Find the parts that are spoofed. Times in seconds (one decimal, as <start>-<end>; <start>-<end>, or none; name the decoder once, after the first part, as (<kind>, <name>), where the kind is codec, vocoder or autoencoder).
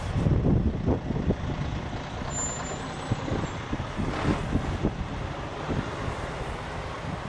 none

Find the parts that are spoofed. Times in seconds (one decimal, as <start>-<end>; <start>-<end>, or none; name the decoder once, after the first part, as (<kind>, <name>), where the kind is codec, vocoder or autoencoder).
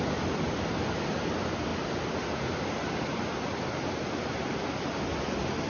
none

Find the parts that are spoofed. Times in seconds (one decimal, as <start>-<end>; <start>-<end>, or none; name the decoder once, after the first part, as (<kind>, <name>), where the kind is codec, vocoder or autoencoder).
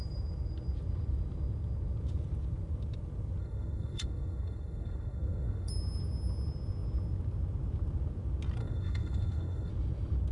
3.4-5.7 (codec, SNAC); 8.6-9.7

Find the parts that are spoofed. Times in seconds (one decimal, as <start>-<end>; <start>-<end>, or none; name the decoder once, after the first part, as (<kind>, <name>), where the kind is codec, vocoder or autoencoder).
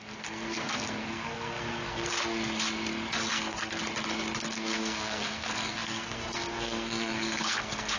0.0-2.1 (codec, SNAC); 3.3-3.8; 4.4-8.0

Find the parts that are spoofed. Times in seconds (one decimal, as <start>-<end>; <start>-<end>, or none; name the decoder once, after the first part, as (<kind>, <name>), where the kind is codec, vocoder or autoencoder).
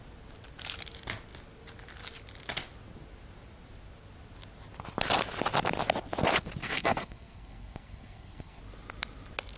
6.6-8.6 (codec, SNAC)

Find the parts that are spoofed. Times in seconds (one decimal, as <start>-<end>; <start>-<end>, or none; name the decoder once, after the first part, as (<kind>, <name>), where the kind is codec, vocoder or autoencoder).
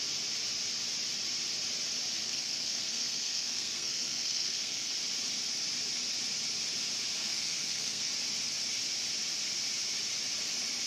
2.2-4.9 (codec, SNAC); 7.2-8.1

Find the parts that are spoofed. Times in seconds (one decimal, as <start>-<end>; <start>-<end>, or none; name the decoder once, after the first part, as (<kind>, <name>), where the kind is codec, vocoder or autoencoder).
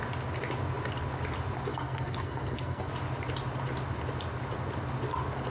1.7-2.9 (codec, SNAC)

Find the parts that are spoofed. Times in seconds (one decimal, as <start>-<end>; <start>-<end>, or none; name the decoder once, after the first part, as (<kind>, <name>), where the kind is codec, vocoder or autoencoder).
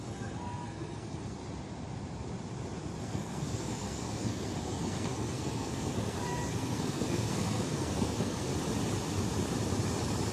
0.0-1.4 (codec, SNAC); 3.0-8.5